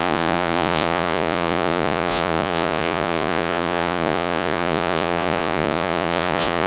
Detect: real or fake fake